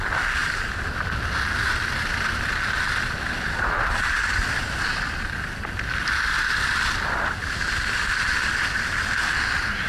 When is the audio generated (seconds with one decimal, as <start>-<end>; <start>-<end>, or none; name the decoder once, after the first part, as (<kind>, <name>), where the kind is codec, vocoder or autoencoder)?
none